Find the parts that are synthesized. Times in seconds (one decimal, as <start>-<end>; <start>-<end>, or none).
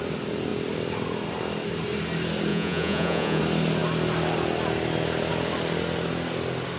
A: 2.5-3.4